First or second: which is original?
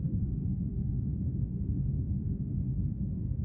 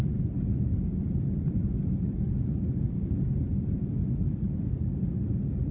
second